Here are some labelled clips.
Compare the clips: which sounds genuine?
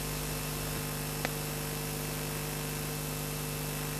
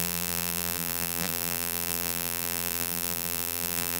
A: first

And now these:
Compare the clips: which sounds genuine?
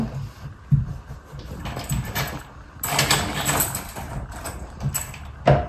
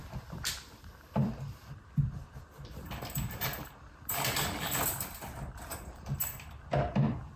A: first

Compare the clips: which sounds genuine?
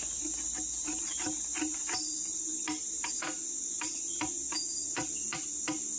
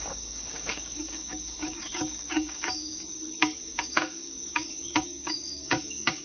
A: first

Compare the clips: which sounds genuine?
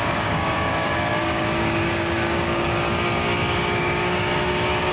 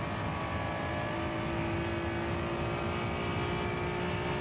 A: second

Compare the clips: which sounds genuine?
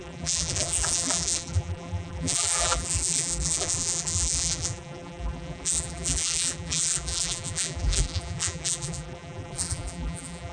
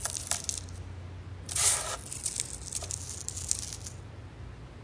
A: second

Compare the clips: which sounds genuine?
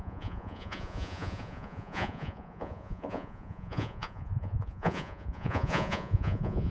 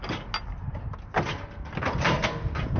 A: second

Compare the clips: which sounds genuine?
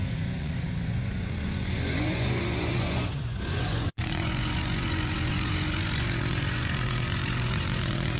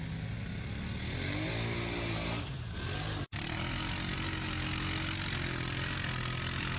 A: second